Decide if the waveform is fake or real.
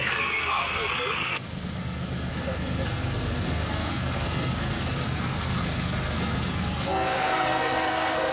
fake